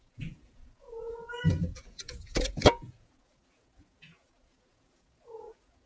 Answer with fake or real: fake